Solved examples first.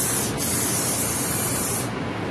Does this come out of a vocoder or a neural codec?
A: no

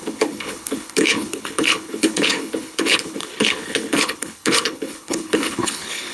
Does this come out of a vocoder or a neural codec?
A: yes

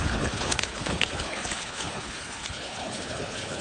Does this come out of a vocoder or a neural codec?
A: yes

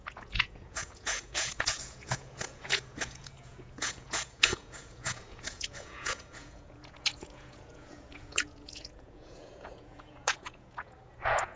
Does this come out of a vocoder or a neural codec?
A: yes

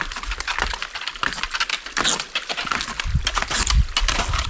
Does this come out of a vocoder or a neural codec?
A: no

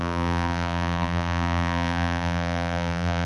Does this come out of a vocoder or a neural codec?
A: yes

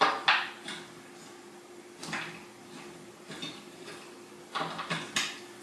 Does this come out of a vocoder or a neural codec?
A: no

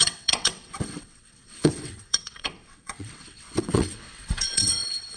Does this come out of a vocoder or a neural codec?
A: yes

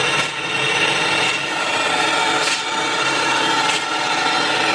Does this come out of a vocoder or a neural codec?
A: no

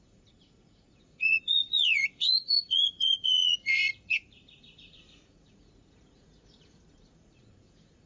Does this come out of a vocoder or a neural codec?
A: yes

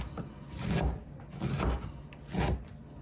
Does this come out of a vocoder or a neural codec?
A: no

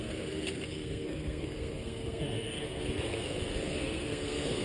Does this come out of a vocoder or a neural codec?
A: yes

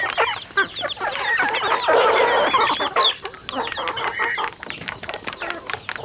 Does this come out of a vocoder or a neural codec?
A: no